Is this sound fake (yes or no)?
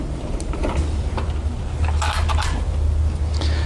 no